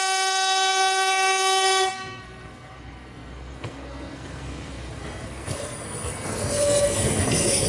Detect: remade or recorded remade